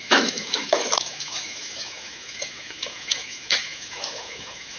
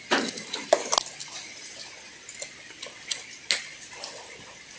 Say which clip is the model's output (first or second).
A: first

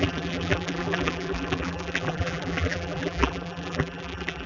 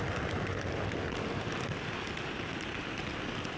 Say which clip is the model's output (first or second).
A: first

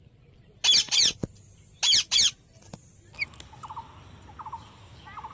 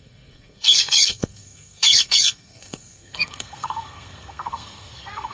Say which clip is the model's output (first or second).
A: second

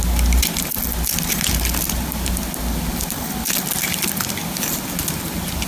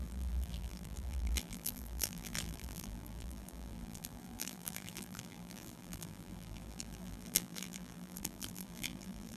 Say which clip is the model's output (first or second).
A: second